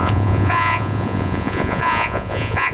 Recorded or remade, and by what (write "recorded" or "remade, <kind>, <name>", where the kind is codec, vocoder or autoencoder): remade, vocoder, Vocos